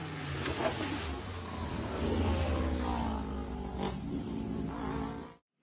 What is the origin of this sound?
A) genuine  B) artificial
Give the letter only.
A